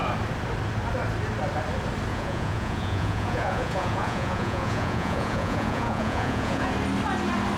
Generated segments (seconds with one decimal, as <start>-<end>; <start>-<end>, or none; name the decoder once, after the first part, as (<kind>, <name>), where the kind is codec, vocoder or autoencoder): 2.1-6.7 (vocoder, Vocos)